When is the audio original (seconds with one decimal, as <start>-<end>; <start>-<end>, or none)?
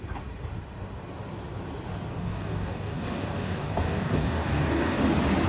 0.0-2.1; 5.0-5.5